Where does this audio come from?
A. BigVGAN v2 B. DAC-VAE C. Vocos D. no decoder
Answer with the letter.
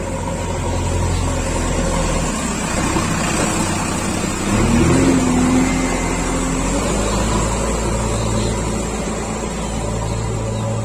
D